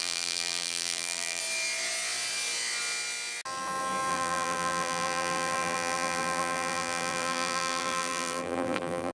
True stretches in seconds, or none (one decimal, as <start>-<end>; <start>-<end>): 1.4-4.1